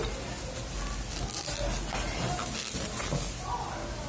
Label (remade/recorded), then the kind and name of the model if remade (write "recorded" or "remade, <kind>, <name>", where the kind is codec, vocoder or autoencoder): recorded